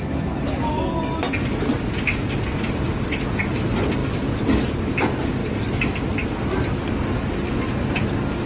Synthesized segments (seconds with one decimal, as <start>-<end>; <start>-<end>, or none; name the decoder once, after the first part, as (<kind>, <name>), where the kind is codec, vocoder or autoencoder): none